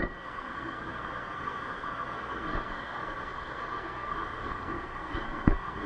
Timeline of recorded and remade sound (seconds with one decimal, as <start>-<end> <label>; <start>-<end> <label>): 0.0-5.9 remade